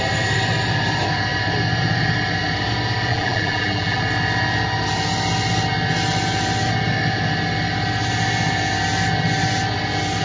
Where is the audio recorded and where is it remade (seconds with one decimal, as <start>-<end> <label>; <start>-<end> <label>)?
0.0-3.1 recorded; 3.1-4.0 remade; 4.0-10.2 recorded